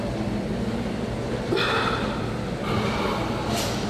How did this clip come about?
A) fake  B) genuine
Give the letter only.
B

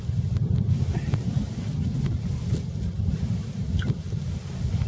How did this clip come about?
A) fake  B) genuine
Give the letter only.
B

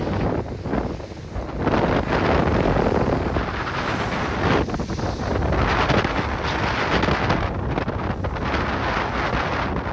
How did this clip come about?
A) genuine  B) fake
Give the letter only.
A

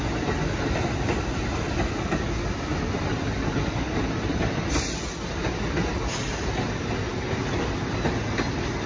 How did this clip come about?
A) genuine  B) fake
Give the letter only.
A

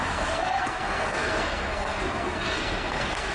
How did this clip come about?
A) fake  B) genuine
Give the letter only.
A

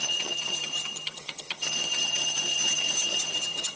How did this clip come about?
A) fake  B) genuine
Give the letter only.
A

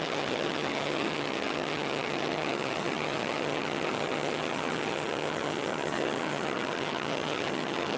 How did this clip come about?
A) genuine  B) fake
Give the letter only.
B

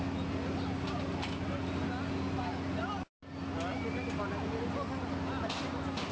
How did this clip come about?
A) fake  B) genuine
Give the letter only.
B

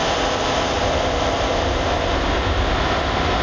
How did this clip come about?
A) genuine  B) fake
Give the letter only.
A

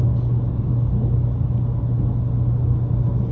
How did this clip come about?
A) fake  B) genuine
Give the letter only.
B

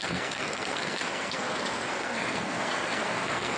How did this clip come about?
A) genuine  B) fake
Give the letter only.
B